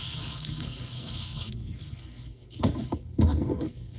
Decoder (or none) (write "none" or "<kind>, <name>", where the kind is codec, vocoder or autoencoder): codec, SNAC